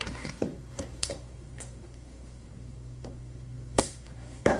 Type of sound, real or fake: fake